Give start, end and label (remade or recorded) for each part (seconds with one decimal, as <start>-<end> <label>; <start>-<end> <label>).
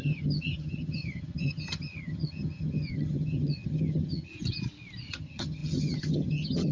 0.0-4.3 remade; 4.3-5.1 recorded; 5.1-6.7 remade